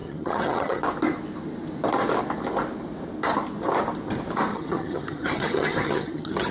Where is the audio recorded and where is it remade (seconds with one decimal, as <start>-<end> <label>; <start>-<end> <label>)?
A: 0.0-0.8 remade; 0.8-4.5 recorded; 4.5-6.5 remade